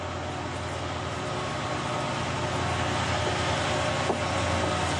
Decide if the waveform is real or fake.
real